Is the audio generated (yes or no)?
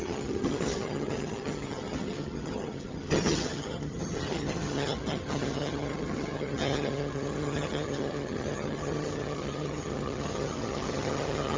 yes